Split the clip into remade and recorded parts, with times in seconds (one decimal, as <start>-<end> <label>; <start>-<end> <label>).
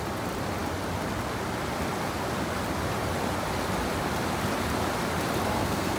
0.0-5.5 recorded; 5.5-6.0 remade